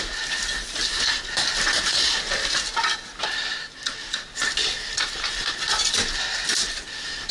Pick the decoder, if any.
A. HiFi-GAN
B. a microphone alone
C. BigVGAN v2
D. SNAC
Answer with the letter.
B